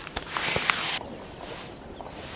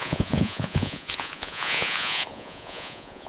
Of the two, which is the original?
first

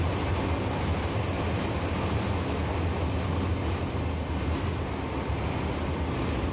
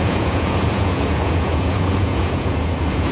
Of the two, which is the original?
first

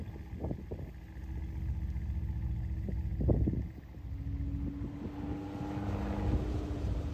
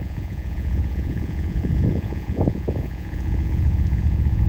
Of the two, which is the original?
first